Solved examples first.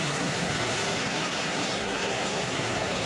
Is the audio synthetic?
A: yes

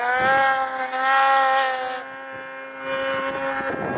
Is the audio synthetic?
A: no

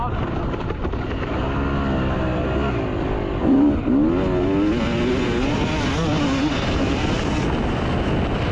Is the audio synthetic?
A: no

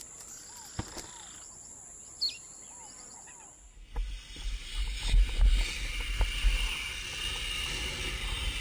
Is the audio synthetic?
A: no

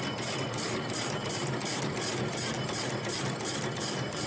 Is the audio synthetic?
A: yes